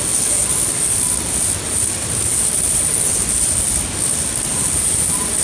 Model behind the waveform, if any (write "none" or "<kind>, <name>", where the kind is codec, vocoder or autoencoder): none